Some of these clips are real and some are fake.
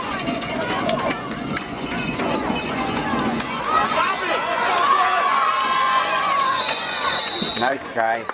fake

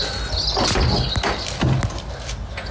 real